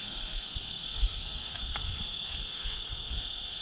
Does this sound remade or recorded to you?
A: remade